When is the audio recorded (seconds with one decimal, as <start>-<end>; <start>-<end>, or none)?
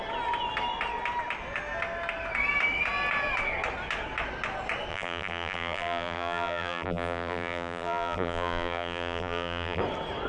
0.0-4.9; 9.8-10.3